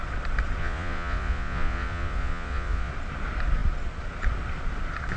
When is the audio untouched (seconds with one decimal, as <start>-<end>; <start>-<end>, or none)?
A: 0.0-0.6; 2.9-5.2

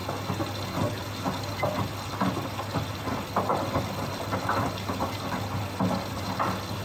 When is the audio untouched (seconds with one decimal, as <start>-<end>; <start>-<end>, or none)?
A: 0.0-6.8

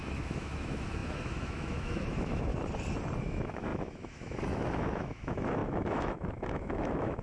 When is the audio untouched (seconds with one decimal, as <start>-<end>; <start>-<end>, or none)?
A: 2.5-3.2

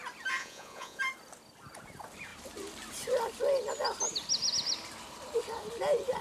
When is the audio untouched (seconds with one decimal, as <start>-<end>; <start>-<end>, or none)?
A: 0.0-0.4; 1.0-6.2